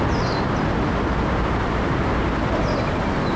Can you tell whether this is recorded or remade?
recorded